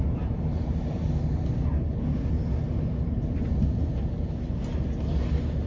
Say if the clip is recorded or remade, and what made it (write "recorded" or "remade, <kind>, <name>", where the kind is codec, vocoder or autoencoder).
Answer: recorded